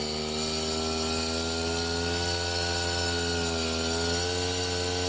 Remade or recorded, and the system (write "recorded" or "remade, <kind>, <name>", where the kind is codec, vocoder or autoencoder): recorded